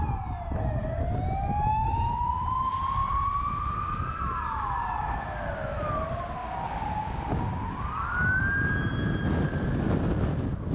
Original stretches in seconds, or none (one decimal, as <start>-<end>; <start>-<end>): 0.0-1.7; 2.3-6.4; 8.4-10.7